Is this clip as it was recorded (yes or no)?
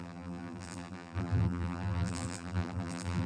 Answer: no